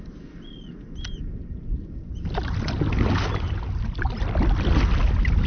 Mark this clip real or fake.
real